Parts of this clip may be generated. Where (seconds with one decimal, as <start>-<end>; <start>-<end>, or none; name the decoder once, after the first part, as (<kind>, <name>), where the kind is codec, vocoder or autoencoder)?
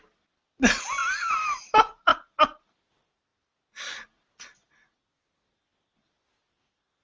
none